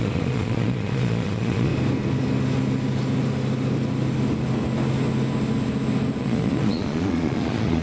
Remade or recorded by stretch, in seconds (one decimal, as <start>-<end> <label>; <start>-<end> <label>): 0.0-1.7 remade; 1.7-6.2 recorded; 6.2-7.8 remade